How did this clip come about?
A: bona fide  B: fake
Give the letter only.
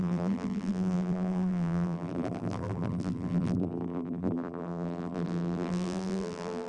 B